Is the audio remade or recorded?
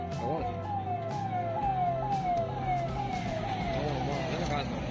recorded